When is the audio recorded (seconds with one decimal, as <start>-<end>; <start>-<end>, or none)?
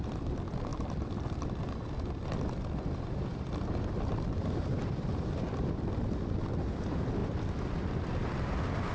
0.0-0.7; 1.2-3.3; 5.5-8.9